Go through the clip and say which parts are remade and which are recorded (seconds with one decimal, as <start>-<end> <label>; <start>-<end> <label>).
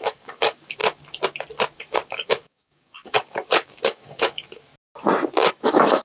0.0-0.8 remade; 0.8-1.8 recorded; 1.8-4.7 remade; 4.7-5.5 recorded; 5.5-6.0 remade